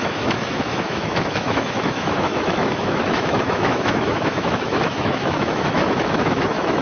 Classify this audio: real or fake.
fake